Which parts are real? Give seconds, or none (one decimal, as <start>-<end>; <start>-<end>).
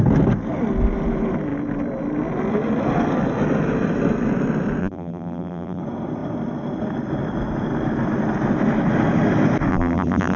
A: 0.0-4.8; 5.8-9.7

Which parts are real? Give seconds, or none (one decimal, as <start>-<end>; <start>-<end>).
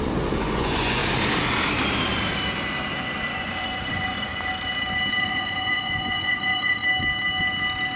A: 1.0-3.3; 4.3-5.2; 6.8-8.0